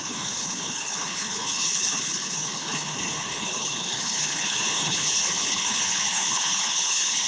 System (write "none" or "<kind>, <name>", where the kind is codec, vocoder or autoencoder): codec, HILCodec